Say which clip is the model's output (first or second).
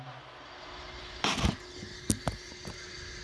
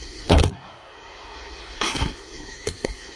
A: second